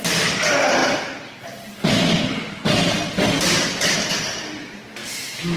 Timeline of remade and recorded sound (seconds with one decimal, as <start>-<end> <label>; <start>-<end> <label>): 0.0-3.7 recorded; 3.7-4.4 remade; 4.4-5.0 recorded; 5.0-5.6 remade